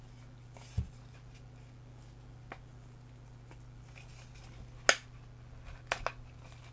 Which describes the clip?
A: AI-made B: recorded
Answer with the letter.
B